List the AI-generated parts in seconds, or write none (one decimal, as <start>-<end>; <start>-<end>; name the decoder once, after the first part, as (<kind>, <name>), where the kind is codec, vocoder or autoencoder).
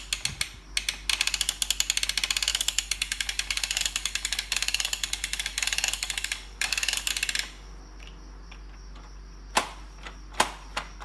2.5-7.1 (codec, DAC)